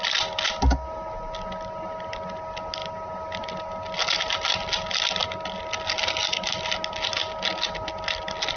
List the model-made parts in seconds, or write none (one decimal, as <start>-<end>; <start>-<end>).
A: none